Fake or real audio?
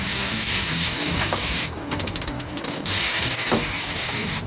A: fake